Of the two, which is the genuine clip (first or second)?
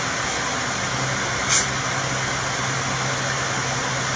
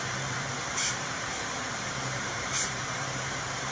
first